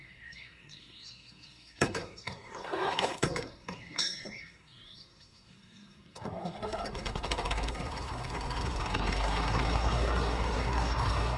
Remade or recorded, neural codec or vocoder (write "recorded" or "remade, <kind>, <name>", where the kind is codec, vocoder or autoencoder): remade, codec, SNAC